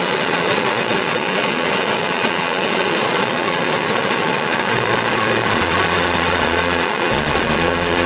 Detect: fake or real fake